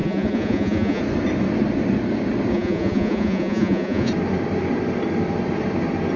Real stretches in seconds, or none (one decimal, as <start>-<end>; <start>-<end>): 1.0-2.5; 4.1-6.2

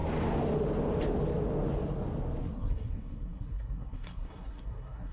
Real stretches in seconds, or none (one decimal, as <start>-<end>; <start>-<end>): 0.0-2.4

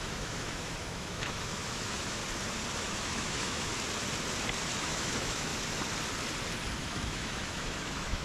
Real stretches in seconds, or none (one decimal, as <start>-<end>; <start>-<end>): 2.2-2.8; 3.7-4.8; 5.5-6.8

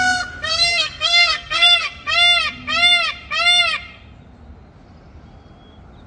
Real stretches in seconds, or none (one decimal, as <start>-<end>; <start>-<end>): 0.0-0.5; 2.1-6.1

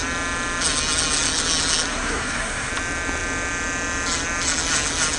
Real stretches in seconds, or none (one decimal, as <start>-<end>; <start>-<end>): 0.0-1.9; 2.7-5.2

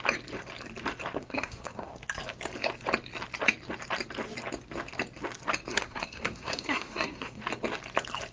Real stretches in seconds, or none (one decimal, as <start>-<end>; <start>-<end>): 0.0-1.2; 1.9-5.7; 7.4-8.3

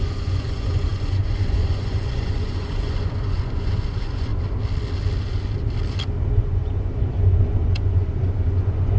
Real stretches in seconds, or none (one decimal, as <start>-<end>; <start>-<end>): 4.3-6.3

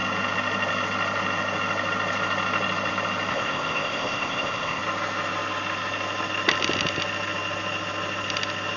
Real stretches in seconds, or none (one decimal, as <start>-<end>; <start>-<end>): 0.0-3.3; 4.8-8.8